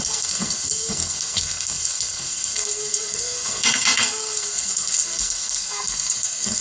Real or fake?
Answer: fake